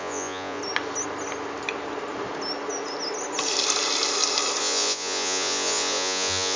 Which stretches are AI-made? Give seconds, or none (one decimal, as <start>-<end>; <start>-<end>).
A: 0.0-0.6; 4.6-6.6